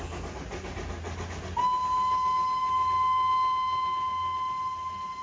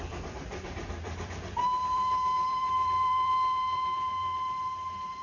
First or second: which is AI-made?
second